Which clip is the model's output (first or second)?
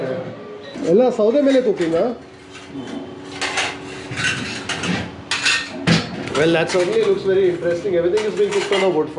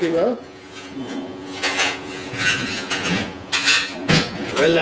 second